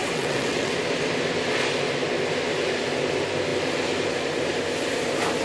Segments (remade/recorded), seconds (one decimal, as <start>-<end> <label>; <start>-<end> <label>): 0.0-0.7 remade; 0.7-5.4 recorded